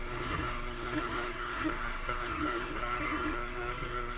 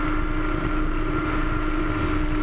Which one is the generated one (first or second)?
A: first